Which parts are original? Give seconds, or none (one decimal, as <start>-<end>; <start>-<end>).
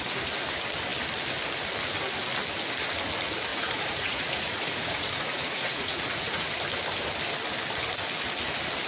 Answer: 0.0-3.5; 6.6-8.9